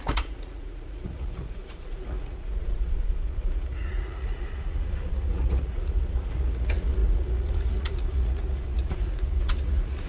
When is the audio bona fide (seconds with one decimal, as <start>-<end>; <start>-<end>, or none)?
none